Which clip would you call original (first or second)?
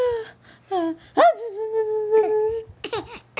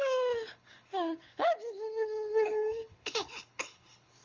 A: first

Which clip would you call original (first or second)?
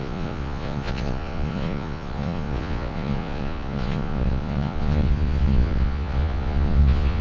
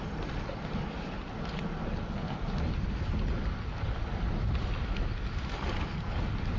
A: second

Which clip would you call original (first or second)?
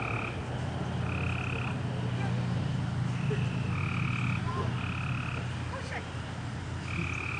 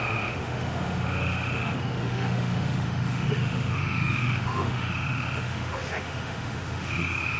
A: first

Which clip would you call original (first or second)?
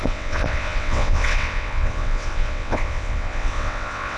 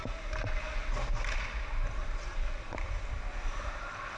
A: second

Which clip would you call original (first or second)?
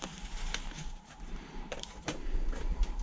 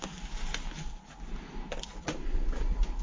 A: second